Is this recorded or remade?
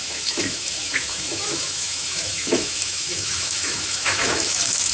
remade